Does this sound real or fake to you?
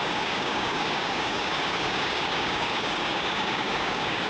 fake